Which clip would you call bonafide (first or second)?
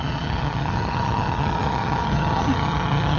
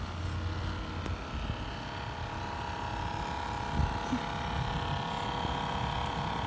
second